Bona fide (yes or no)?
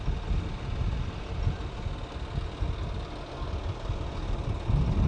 yes